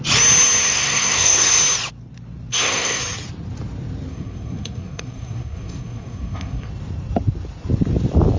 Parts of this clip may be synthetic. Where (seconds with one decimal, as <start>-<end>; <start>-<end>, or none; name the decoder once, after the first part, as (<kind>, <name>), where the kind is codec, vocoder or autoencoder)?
0.7-1.6 (codec, SNAC); 2.5-3.0; 4.1-6.7